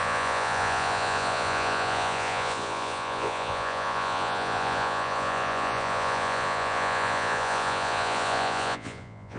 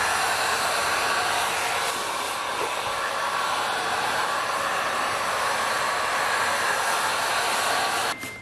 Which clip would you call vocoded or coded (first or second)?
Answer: first